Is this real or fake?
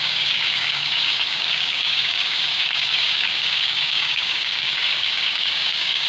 fake